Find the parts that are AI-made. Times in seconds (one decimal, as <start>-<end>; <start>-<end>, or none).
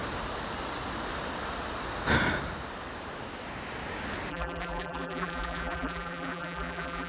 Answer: 4.3-7.1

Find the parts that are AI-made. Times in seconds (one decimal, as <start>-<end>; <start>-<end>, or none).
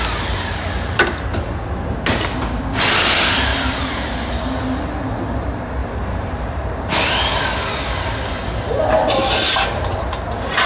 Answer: 3.5-4.1; 5.8-6.9; 9.2-9.8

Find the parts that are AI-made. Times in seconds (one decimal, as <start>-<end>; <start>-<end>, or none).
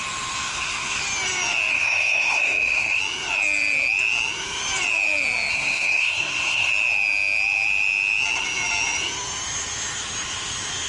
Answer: 0.5-1.0; 1.7-3.0; 5.5-6.7